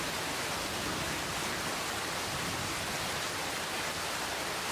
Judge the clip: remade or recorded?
recorded